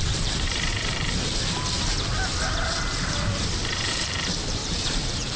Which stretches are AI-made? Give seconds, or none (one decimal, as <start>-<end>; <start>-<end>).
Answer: 0.0-0.7; 3.9-5.4